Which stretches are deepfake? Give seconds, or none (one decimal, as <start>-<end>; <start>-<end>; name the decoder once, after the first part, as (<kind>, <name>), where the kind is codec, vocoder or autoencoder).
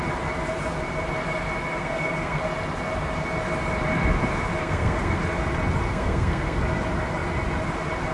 1.8-2.4 (codec, SNAC); 4.6-5.2; 5.9-6.6